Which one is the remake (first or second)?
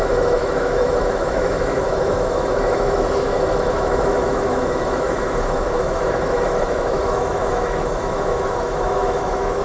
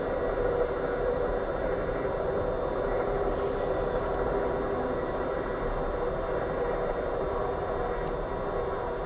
first